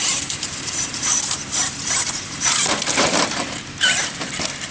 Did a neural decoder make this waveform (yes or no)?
yes